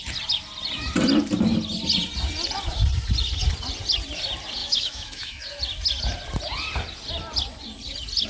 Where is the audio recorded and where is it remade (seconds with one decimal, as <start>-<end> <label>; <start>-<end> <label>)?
0.0-4.6 recorded; 4.6-5.4 remade; 5.4-8.3 recorded